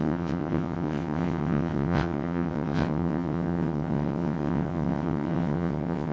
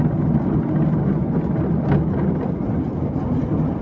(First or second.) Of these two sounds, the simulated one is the first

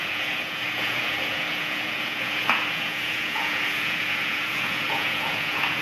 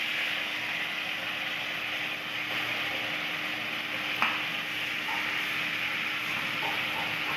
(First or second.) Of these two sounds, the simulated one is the first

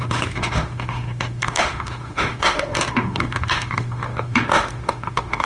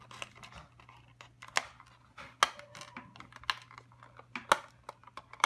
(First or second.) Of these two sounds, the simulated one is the first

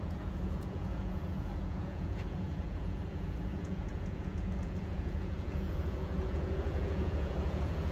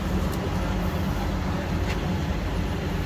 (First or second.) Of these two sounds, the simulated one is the first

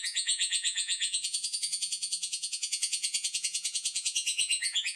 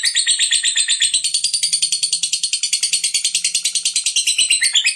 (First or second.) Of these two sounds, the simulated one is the first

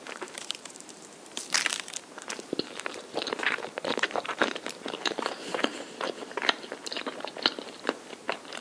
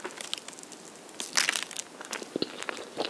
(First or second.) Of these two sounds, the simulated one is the first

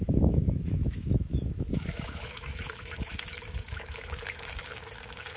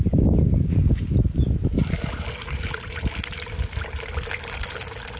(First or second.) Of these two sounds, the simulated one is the first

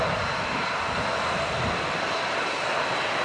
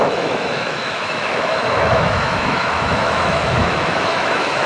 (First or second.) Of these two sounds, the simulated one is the second